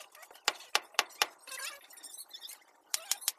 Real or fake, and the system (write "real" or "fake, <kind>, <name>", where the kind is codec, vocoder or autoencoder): real